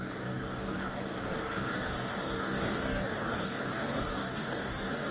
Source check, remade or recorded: remade